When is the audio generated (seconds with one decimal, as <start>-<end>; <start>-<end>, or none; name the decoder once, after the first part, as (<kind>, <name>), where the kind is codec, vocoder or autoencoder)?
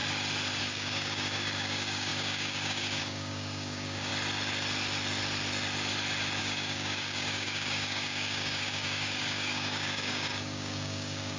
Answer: 0.6-4.1 (codec, DAC); 6.4-11.4